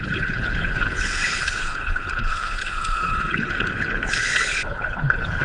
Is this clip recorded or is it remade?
remade